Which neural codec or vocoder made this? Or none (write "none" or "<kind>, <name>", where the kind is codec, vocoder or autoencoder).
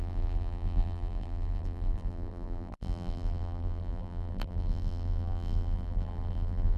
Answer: vocoder, BigVGAN v2